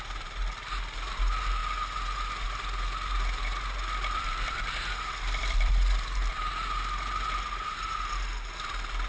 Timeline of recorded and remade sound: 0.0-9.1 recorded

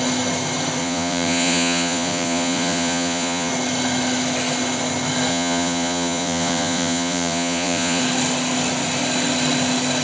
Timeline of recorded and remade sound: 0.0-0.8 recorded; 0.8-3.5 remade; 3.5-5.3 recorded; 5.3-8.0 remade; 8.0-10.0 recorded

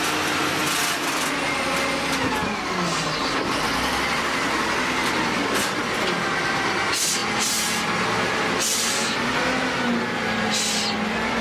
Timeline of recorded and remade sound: 0.0-11.4 recorded